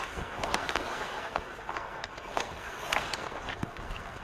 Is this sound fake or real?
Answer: fake